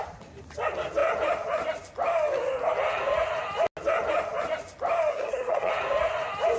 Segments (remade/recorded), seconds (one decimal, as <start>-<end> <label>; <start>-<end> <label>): 0.0-5.1 recorded; 5.1-5.7 remade; 5.7-6.6 recorded